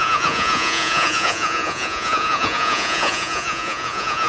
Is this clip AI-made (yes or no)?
yes